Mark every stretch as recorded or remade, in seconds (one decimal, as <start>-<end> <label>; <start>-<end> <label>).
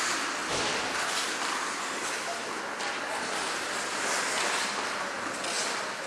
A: 0.0-6.1 recorded